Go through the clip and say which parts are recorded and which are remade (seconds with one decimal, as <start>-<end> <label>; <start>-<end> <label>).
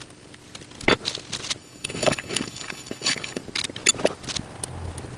0.0-1.6 recorded; 1.6-3.4 remade; 3.4-5.2 recorded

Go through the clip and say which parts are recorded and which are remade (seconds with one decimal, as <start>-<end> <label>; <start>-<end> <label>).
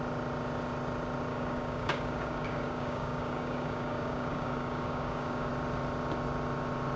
0.0-1.3 recorded; 1.3-5.5 remade; 5.5-7.0 recorded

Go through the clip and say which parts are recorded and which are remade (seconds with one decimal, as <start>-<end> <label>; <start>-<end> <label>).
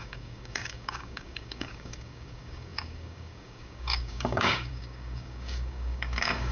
0.0-6.5 remade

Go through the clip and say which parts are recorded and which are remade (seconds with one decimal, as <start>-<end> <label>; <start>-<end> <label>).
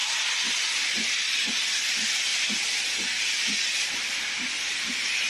0.0-5.3 recorded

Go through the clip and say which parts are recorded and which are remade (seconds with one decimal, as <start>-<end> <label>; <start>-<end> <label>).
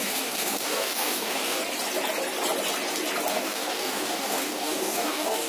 0.0-1.6 remade; 1.6-3.3 recorded; 3.3-5.5 remade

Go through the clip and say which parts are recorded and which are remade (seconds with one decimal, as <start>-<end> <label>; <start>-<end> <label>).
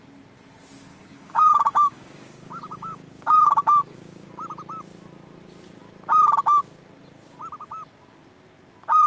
0.0-0.9 recorded; 0.9-4.3 remade; 4.3-9.1 recorded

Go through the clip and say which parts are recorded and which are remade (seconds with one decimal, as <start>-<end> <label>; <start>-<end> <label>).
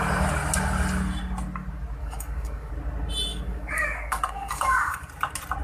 0.0-2.0 recorded; 2.0-2.7 remade; 2.7-3.3 recorded; 3.3-5.1 remade; 5.1-5.6 recorded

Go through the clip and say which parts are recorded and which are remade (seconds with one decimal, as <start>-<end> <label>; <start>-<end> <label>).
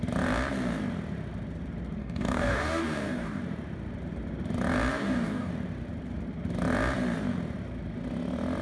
0.0-2.0 recorded; 2.0-3.4 remade; 3.4-4.9 recorded; 4.9-5.5 remade; 5.5-8.6 recorded